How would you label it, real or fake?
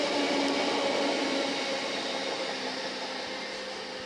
real